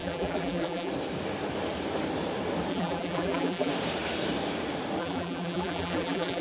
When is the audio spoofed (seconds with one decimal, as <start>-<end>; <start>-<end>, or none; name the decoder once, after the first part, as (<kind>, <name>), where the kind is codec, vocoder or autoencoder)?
0.0-0.9 (vocoder, BigVGAN v2); 2.7-3.7; 5.0-6.4

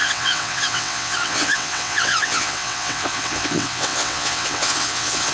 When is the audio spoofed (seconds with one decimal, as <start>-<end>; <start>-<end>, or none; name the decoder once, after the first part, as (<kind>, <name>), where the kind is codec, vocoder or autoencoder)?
0.0-5.3 (vocoder, WaveNeXt)

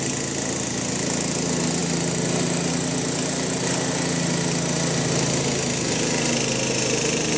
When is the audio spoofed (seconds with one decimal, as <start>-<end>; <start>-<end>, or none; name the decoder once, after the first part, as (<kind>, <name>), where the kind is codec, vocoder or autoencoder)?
none

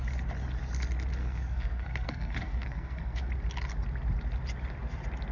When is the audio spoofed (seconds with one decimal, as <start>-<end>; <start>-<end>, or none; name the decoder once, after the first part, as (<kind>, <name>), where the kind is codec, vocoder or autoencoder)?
1.2-3.3 (codec, SNAC)

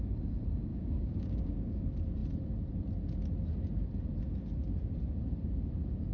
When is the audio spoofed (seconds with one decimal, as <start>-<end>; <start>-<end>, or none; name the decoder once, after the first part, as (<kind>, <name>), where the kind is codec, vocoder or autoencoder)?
0.7-1.8 (codec, DAC)

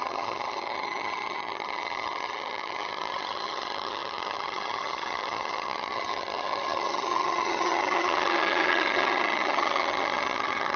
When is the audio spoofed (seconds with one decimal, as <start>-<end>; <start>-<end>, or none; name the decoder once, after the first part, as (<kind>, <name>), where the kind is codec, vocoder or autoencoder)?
0.0-10.8 (vocoder, HiFi-GAN)

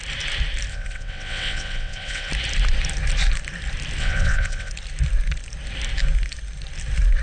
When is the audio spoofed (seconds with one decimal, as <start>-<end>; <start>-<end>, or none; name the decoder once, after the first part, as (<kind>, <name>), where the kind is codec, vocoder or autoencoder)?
0.7-2.3 (vocoder, WaveNeXt); 4.0-4.7

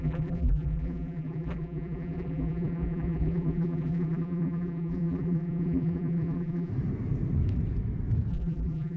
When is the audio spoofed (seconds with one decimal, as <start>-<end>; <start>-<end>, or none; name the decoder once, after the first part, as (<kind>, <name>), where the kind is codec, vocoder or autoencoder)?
0.0-6.7 (vocoder, BigVGAN v2); 8.3-9.0